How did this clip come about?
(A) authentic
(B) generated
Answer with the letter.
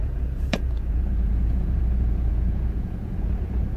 B